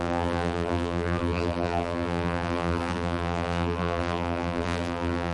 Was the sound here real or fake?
fake